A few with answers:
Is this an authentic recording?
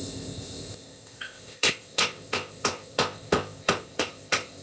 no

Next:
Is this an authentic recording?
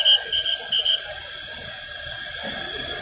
yes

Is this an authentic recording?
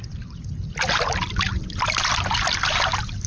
yes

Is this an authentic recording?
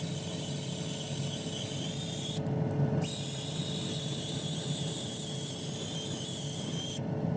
yes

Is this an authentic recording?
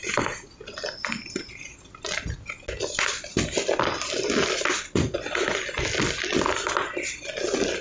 yes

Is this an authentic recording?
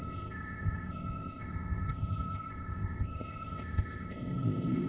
no